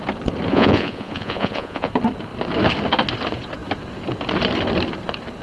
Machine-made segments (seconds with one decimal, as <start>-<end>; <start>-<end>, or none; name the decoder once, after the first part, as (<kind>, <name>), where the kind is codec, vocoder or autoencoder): 0.5-1.9 (vocoder, Vocos)